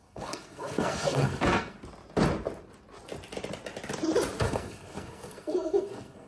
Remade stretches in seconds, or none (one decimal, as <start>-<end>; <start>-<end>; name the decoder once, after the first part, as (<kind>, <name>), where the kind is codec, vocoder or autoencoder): 0.0-1.8 (codec, SNAC); 4.4-6.3